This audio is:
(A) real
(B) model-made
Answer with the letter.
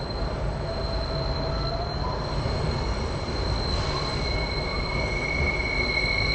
A